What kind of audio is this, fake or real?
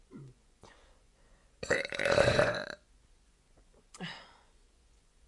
fake